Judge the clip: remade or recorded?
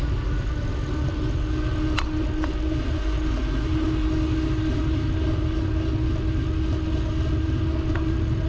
recorded